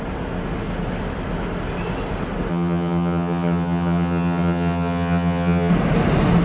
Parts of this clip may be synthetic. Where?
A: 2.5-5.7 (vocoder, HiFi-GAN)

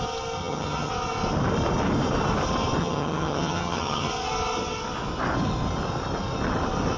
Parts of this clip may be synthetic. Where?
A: 0.4-0.9 (vocoder, HiFi-GAN); 2.8-4.1